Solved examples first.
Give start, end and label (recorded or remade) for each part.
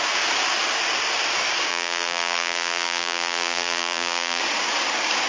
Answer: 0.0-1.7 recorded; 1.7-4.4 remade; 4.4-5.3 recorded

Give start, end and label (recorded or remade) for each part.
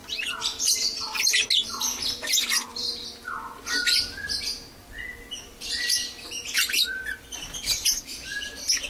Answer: 0.0-1.3 remade; 1.3-4.8 recorded; 4.8-8.4 remade; 8.4-8.9 recorded